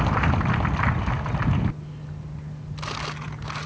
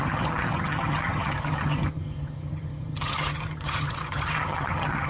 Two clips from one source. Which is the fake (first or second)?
second